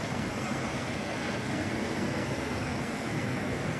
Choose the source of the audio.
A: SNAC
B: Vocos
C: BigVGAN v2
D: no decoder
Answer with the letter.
A